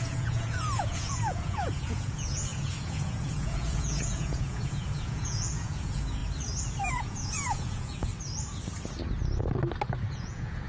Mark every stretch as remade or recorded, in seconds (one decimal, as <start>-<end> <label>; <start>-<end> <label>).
0.0-6.2 remade; 6.2-6.9 recorded; 6.9-8.1 remade; 8.1-10.1 recorded; 10.1-10.7 remade